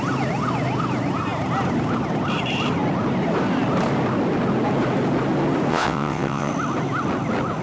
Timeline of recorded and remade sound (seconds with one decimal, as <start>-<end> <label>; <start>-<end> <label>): 0.0-5.7 recorded; 5.7-6.5 remade; 6.5-7.6 recorded